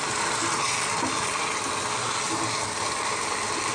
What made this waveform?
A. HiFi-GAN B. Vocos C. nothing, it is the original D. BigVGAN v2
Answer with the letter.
C